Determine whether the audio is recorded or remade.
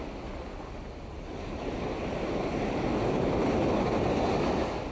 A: recorded